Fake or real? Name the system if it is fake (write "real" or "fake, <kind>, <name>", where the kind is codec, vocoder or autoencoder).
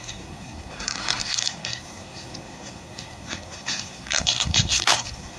fake, codec, SNAC